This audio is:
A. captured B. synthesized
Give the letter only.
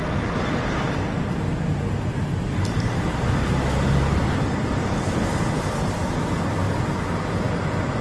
A